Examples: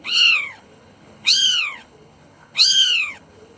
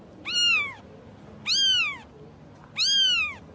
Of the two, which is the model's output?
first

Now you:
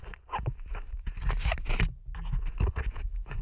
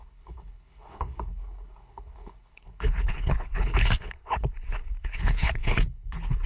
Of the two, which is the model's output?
second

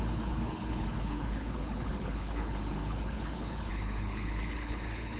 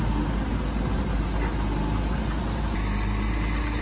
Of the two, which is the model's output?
first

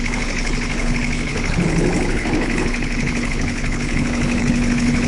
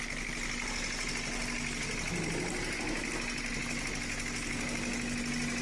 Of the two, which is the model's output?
first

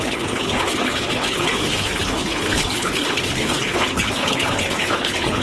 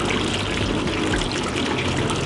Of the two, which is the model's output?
first